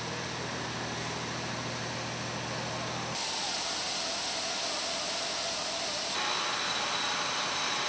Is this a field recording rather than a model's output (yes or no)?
yes